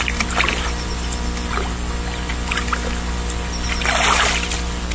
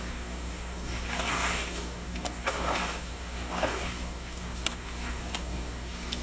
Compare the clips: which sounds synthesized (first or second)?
second